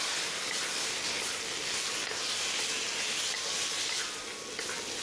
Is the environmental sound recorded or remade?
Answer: recorded